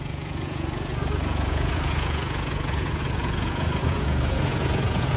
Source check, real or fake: fake